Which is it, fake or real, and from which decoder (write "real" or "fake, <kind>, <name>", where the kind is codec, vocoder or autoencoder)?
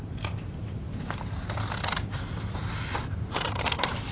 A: fake, vocoder, BigVGAN v2